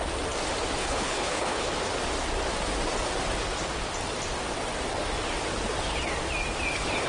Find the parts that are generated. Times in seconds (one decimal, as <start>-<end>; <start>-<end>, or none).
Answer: 0.8-1.7

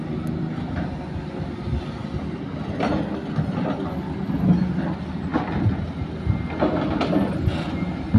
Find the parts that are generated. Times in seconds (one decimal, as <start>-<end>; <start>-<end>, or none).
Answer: none

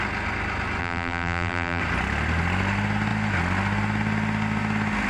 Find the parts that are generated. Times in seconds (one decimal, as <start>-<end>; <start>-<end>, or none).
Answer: 0.8-1.8

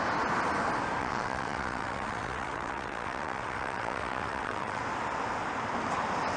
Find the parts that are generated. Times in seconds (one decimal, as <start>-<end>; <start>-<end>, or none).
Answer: 1.0-4.8

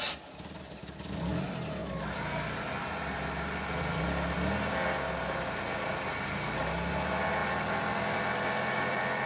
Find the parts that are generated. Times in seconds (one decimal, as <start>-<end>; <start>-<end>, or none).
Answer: 7.4-9.2

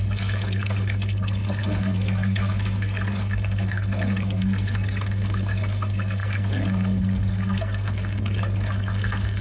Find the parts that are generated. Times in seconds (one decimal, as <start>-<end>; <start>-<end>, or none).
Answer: 0.0-9.4